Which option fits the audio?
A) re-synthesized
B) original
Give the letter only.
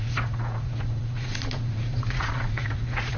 A